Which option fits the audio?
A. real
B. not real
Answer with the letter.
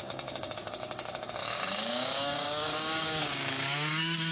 B